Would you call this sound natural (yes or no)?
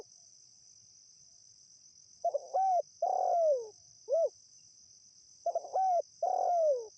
yes